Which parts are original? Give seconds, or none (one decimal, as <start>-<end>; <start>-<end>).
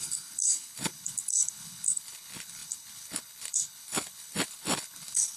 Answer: none